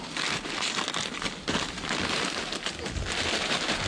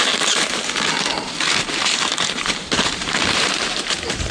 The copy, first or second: second